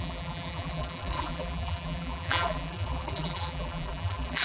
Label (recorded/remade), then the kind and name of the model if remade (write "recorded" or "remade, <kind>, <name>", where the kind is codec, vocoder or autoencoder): remade, vocoder, BigVGAN v2